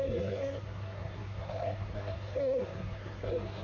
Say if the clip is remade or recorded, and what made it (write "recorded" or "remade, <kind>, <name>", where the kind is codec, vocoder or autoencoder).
remade, codec, SNAC